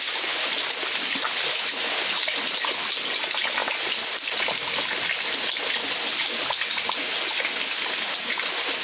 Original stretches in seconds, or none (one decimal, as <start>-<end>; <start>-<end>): 0.0-8.8